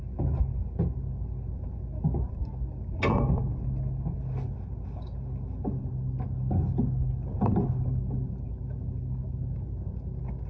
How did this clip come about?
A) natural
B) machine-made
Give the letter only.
A